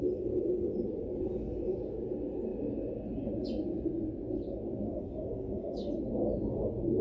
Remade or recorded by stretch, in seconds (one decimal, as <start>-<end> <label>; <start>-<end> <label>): 0.0-4.9 recorded; 4.9-5.9 remade; 5.9-7.0 recorded